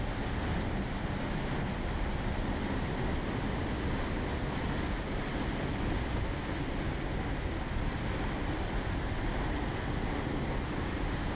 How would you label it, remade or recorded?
recorded